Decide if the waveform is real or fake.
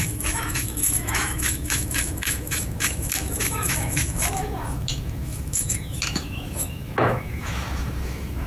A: fake